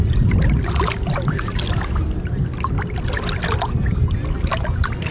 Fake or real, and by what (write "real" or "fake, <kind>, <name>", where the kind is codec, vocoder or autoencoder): real